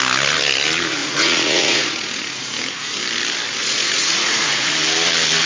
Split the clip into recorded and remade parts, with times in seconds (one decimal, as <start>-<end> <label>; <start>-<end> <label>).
0.0-1.0 recorded; 1.0-2.4 remade; 2.4-3.6 recorded; 3.6-4.7 remade; 4.7-5.5 recorded